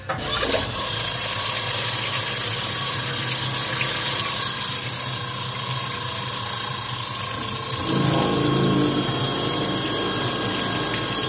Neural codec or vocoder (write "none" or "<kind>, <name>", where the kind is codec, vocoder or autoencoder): none